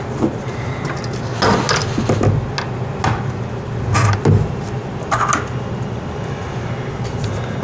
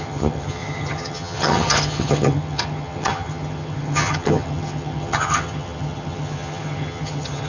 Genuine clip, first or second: first